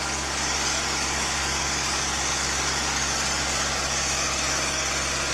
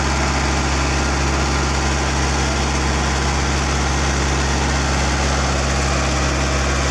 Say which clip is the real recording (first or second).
second